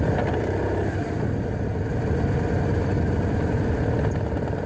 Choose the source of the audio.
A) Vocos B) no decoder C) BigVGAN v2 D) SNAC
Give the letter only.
B